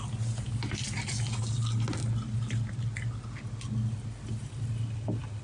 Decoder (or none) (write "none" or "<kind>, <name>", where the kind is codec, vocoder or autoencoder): none